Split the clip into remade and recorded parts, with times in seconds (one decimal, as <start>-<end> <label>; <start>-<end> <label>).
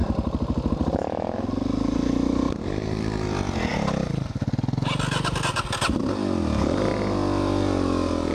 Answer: 0.0-8.3 recorded